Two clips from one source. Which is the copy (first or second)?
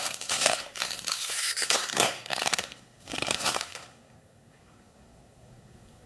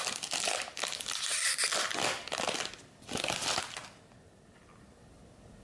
first